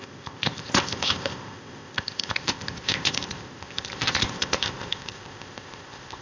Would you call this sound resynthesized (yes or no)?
yes